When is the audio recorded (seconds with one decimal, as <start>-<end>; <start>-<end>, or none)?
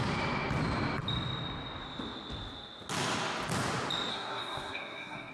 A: 0.0-4.1